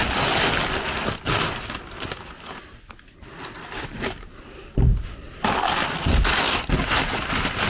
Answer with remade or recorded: recorded